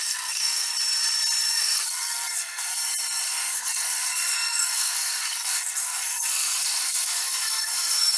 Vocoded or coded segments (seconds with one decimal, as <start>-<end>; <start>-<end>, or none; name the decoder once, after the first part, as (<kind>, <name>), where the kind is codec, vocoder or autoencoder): 0.0-0.7 (codec, SNAC); 1.5-2.8; 3.3-8.2